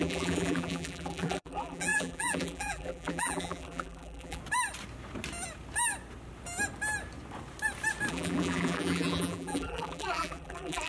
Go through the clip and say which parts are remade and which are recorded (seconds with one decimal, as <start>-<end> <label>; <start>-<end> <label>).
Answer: 0.0-4.4 remade; 4.4-8.1 recorded; 8.1-10.9 remade